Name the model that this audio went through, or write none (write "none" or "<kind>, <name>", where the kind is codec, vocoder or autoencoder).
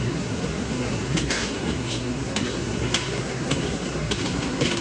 codec, SNAC